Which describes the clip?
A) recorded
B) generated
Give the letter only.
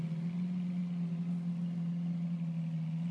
A